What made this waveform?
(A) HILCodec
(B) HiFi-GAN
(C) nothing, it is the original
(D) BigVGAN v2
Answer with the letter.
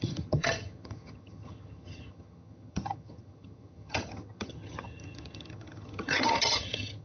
B